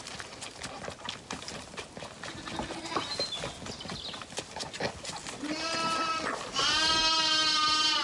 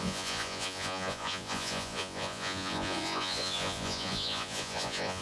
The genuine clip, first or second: first